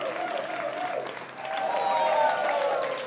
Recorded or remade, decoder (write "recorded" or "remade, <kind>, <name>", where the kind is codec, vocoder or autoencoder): recorded